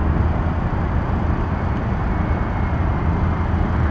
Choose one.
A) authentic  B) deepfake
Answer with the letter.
A